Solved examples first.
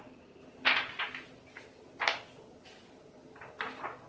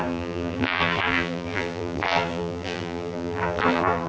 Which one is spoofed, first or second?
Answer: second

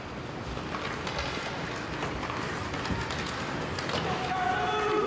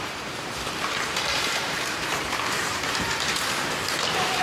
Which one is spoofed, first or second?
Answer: second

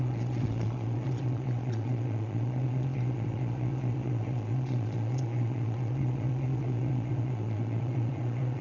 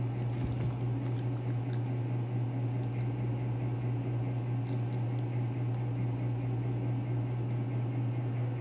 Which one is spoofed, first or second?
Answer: first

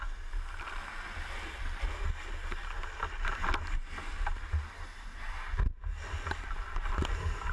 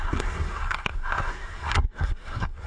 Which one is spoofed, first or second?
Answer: second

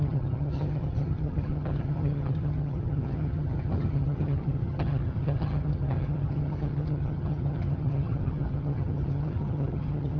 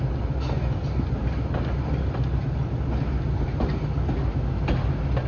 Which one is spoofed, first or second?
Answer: first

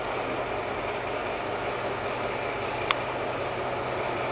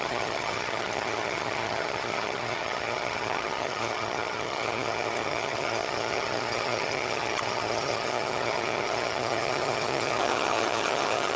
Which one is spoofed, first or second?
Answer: second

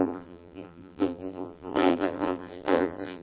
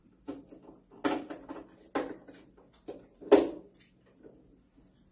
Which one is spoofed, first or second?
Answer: first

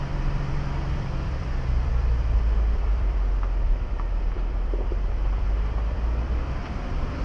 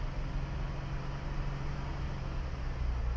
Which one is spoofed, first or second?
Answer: first